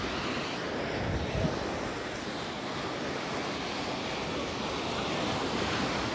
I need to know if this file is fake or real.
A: real